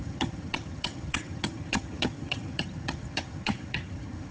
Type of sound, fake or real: fake